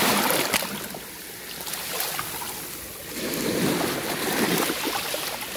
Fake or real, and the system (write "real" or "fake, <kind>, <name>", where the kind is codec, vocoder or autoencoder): real